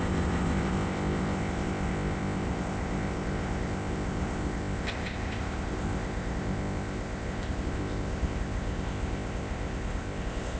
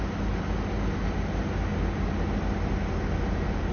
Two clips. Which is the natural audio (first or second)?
second